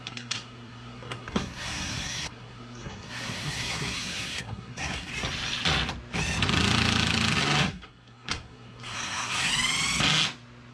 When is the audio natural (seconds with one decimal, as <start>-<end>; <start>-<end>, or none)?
5.1-7.6; 9.5-10.7